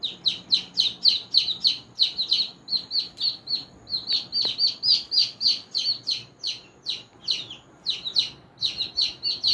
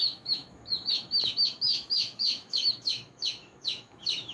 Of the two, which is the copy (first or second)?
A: second